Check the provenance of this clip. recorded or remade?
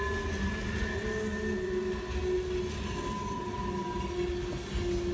recorded